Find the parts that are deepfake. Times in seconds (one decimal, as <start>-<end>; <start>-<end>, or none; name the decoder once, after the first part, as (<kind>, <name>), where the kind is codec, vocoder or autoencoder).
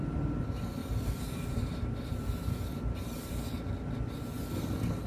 0.8-3.7 (vocoder, BigVGAN v2)